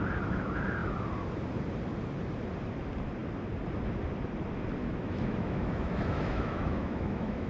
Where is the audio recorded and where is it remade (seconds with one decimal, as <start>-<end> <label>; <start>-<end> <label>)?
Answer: 0.0-4.8 recorded; 4.8-7.5 remade